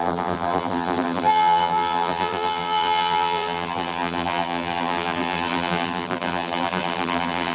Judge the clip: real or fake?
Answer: fake